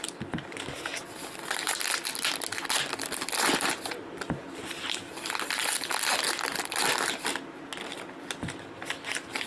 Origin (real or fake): real